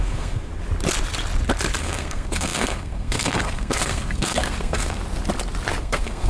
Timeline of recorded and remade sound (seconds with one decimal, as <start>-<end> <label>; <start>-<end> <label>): 0.0-0.5 remade; 0.5-1.8 recorded; 1.8-5.0 remade; 5.0-5.8 recorded; 5.8-6.3 remade